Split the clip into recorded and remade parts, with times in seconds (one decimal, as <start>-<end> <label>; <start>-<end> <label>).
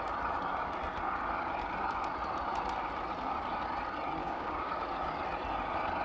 0.0-4.2 recorded; 4.2-4.7 remade; 4.7-6.0 recorded